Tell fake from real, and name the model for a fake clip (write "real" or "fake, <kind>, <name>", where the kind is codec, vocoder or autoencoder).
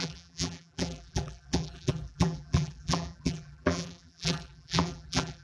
fake, vocoder, BigVGAN v2